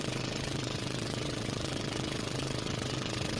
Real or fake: fake